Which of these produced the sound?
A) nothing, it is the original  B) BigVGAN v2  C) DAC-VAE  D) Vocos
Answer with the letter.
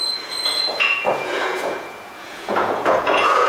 D